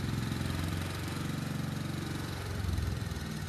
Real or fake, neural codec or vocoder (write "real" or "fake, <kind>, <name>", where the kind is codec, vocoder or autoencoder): fake, vocoder, BigVGAN v2